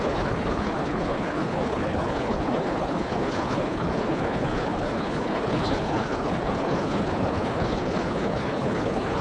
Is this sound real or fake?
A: fake